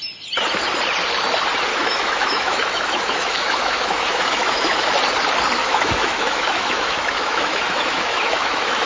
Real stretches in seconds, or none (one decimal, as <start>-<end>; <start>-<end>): 0.0-1.7; 4.9-5.6